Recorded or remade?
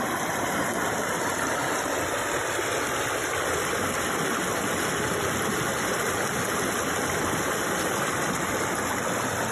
recorded